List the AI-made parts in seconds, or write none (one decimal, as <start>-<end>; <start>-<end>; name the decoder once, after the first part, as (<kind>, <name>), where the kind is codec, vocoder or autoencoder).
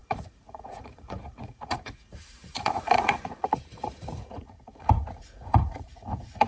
0.0-6.5 (vocoder, Vocos)